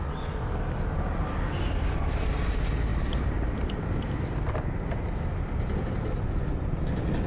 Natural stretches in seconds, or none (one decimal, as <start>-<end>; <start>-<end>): 0.0-2.9; 4.4-7.3